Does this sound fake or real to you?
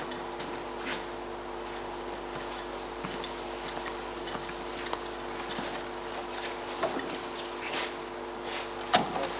real